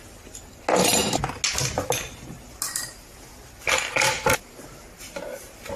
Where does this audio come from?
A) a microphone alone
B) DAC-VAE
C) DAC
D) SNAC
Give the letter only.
A